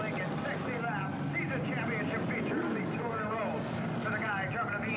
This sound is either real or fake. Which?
real